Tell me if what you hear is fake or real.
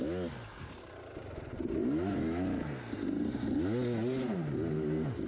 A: real